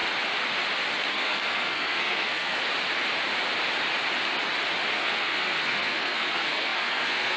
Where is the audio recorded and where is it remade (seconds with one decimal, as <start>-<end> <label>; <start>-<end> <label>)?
0.0-1.1 recorded; 1.1-2.6 remade; 2.6-4.9 recorded; 4.9-7.4 remade